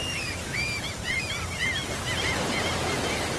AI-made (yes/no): yes